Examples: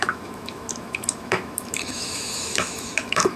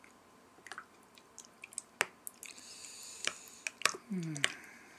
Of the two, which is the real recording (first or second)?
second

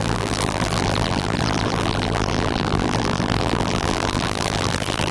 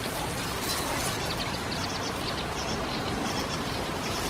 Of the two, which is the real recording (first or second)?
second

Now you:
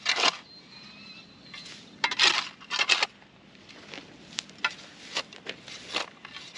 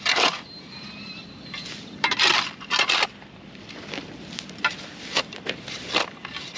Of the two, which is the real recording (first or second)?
first